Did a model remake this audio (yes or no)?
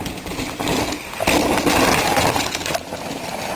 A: no